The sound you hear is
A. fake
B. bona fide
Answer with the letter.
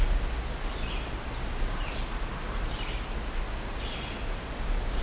B